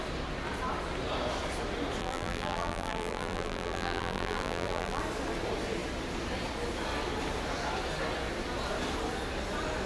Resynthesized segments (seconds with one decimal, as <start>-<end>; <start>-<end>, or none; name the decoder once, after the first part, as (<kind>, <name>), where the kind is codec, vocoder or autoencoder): 2.0-5.0 (vocoder, BigVGAN v2)

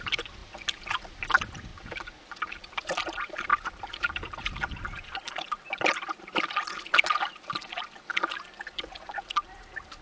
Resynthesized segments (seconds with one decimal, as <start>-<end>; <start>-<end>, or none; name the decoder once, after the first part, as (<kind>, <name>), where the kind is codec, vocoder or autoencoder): 0.0-0.4 (vocoder, BigVGAN v2); 1.2-1.7; 2.6-10.0

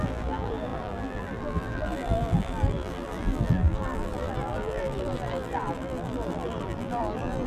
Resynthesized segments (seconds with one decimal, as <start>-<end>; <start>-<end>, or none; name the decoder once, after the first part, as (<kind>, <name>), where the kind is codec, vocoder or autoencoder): 0.0-7.5 (vocoder, BigVGAN v2)

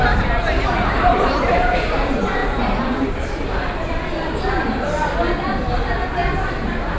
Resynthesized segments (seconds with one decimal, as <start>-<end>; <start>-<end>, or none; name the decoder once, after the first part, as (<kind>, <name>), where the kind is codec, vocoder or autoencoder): 0.0-1.8 (vocoder, BigVGAN v2); 2.4-2.9; 6.2-7.0

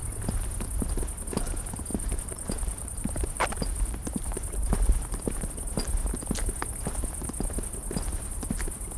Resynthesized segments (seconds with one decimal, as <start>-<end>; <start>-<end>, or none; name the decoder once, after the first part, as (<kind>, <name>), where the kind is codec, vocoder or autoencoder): 1.9-5.5 (vocoder, BigVGAN v2)

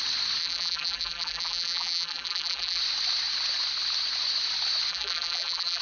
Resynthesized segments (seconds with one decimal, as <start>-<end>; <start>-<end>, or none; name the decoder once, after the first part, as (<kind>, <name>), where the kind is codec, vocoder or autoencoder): 0.4-2.8 (vocoder, BigVGAN v2); 4.9-5.8